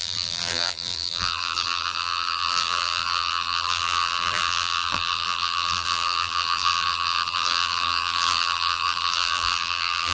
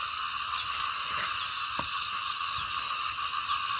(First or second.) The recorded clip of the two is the second